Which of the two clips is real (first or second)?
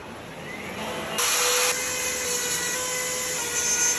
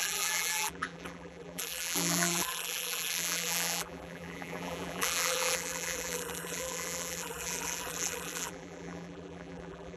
first